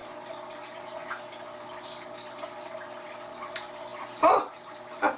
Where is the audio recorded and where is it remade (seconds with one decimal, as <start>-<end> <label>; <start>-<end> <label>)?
0.0-5.2 recorded